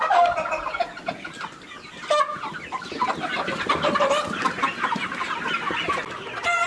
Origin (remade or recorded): recorded